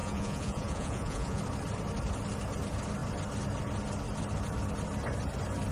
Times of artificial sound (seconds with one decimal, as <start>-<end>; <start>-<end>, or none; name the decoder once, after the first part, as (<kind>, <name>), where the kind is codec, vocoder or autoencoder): 0.0-1.4 (vocoder, Vocos)